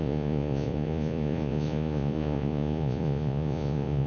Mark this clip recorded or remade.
remade